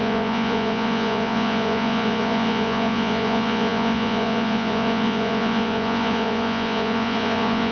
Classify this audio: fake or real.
fake